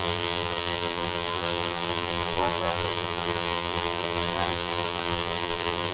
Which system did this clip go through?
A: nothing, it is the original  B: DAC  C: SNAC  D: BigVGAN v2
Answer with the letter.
D